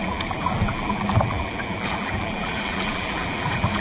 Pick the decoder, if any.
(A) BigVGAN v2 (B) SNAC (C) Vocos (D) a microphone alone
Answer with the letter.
A